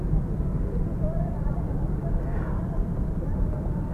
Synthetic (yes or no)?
no